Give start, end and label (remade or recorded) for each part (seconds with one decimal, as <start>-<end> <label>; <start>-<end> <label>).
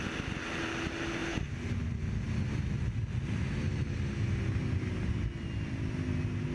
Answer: 0.0-6.5 recorded